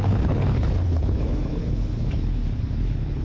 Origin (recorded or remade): remade